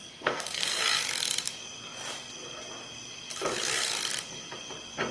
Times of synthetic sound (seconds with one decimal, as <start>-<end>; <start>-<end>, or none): 0.0-0.8